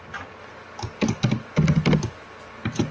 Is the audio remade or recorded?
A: recorded